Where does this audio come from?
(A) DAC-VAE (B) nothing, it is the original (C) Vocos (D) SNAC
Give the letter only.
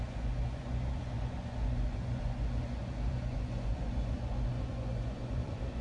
C